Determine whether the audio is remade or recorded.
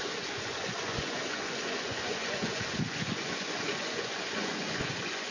remade